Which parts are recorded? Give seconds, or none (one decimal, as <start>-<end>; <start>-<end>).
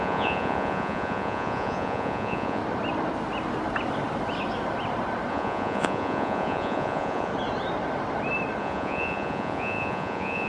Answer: 2.6-5.3; 7.3-8.6